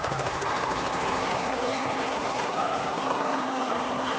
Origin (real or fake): fake